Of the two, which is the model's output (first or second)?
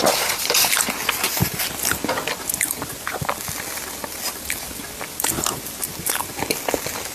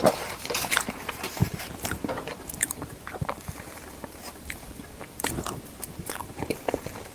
second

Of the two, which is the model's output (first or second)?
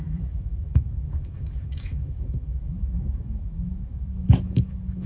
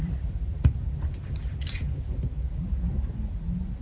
first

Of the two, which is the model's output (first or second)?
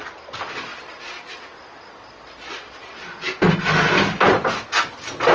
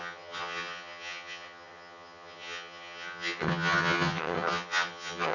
second